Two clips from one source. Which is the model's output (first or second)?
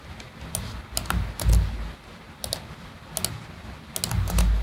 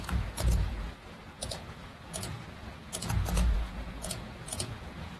second